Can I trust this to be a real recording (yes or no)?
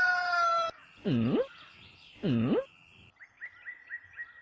yes